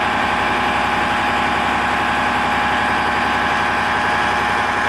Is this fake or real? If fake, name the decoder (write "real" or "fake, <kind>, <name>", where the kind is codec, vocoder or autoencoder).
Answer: real